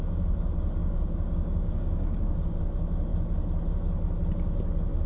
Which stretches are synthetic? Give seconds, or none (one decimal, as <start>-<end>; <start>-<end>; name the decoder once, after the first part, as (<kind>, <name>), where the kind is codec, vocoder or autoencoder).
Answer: 0.8-2.6 (codec, DAC)